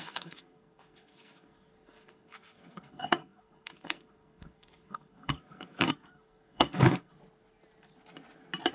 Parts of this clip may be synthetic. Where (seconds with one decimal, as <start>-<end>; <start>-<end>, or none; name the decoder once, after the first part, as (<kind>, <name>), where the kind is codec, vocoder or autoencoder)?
0.0-7.1 (codec, SNAC)